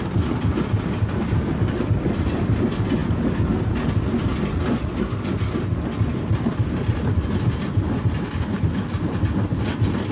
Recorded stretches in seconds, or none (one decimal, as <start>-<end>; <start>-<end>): 0.0-10.1